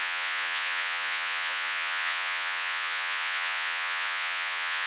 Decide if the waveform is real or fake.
fake